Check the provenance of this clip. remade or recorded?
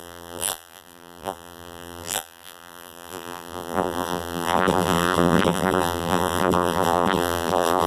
remade